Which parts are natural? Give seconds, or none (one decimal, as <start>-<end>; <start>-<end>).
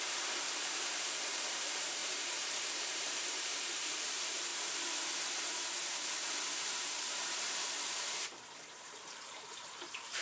4.5-5.4